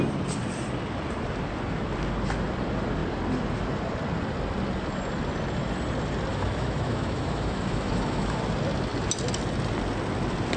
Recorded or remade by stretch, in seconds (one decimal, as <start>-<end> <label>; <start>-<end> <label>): 0.0-6.3 recorded; 6.3-8.4 remade; 8.4-10.6 recorded